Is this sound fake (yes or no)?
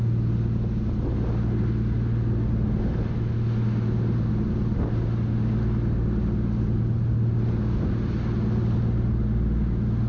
no